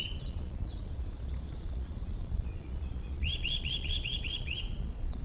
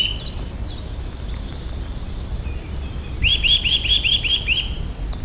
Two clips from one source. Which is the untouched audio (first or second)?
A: second